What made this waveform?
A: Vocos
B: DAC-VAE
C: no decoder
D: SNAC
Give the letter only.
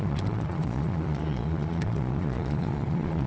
A